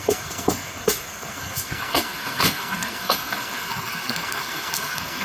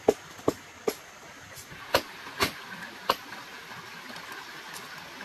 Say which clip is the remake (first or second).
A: first